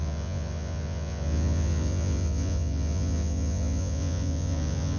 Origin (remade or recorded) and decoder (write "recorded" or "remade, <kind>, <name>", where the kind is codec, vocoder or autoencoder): remade, vocoder, Vocos